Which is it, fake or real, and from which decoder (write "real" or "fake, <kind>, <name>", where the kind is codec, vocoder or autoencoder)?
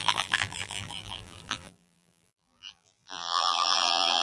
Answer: fake, vocoder, BigVGAN v2